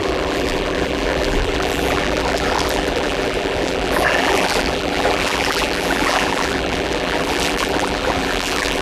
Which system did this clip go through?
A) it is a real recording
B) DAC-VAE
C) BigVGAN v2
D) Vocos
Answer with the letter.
C